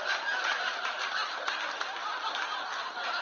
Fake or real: real